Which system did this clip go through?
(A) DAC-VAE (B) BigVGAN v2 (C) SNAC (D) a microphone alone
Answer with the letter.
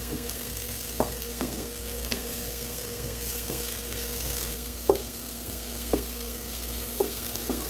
C